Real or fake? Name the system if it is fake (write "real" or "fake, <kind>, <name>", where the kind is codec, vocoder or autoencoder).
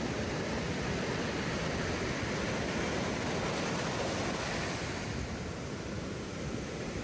real